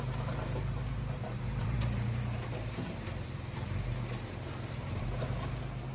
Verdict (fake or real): fake